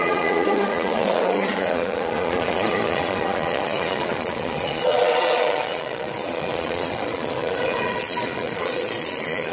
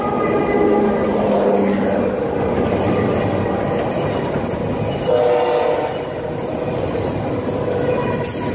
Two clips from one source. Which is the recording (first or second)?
second